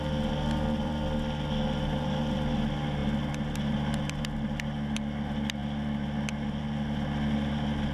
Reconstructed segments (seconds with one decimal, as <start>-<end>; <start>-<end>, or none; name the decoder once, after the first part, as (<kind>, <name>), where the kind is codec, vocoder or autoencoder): none